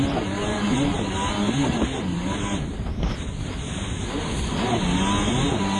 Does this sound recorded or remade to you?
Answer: recorded